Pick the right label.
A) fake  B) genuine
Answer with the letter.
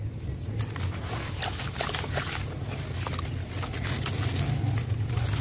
B